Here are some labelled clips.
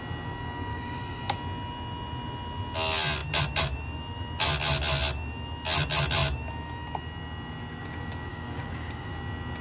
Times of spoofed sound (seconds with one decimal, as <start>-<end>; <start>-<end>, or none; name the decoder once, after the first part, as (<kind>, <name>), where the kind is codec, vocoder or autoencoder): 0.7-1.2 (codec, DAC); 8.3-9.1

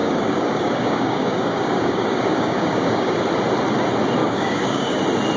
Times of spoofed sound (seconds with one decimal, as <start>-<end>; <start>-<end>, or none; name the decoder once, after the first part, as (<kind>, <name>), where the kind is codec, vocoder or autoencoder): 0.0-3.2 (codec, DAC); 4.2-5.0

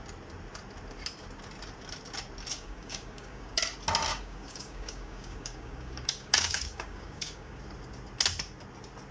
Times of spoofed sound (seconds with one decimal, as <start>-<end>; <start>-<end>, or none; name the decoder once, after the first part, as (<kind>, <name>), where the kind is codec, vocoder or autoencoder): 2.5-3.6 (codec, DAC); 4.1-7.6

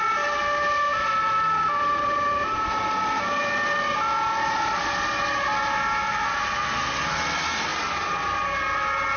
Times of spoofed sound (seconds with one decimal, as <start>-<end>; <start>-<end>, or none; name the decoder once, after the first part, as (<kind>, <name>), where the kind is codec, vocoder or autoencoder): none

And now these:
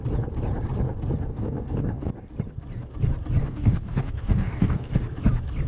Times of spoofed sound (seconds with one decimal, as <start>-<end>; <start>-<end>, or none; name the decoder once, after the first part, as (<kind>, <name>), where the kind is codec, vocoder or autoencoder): 1.3-2.1 (codec, DAC); 3.4-5.0

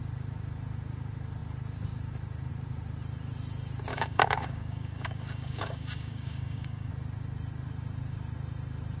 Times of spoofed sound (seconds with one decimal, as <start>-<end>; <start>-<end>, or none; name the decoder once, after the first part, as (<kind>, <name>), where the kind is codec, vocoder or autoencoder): 3.9-6.9 (codec, DAC)

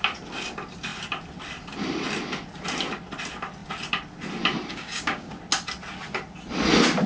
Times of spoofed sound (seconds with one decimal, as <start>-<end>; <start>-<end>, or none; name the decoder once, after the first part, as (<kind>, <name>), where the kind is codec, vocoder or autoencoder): 4.7-5.4 (codec, DAC)